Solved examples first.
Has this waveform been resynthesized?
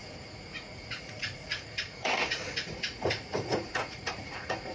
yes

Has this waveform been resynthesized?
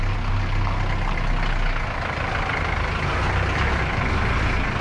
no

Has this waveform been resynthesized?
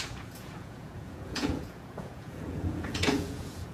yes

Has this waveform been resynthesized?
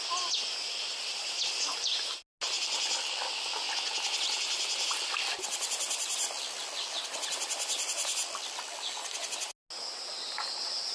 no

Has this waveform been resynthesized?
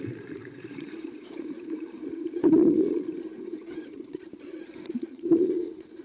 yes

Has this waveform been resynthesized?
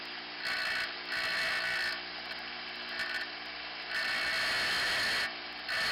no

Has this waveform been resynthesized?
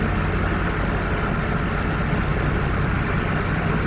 no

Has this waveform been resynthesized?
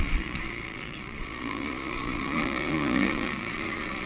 yes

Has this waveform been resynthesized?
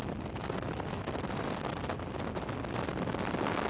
no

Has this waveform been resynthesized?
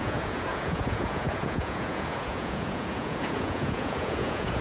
yes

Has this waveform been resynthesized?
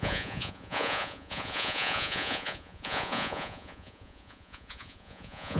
yes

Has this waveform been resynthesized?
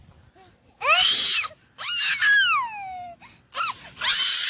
no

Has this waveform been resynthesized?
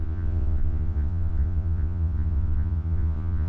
yes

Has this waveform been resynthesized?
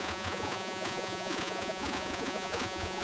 yes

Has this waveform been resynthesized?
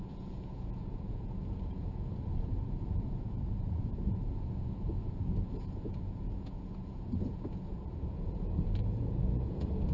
yes